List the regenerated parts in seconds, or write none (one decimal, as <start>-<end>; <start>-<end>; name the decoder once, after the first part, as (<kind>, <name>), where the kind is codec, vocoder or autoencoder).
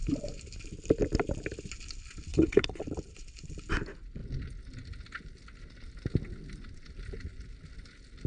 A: 2.3-2.8 (codec, HILCodec)